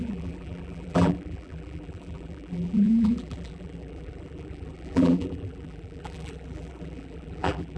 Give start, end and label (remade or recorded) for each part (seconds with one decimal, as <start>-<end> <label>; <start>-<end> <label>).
0.0-7.8 remade